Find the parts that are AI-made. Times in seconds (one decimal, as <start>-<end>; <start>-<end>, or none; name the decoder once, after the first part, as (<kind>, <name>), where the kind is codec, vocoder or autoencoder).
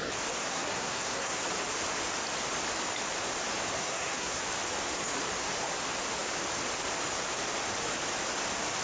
0.4-1.4 (codec, SNAC); 3.8-4.4